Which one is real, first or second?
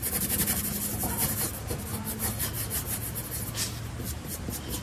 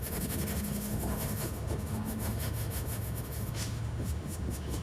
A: first